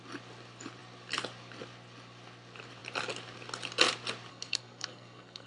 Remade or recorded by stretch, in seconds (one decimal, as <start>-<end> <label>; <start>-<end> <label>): 0.0-4.3 recorded; 4.3-5.5 remade